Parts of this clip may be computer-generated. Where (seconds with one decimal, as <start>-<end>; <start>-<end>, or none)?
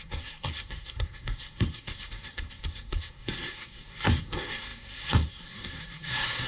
0.0-6.5